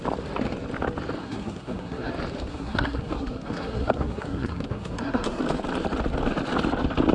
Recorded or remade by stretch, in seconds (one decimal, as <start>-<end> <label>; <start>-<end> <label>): 0.0-1.2 recorded; 1.2-2.1 remade; 2.1-2.5 recorded; 2.5-5.4 remade; 5.4-7.1 recorded